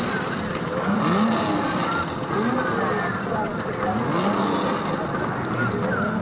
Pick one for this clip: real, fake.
real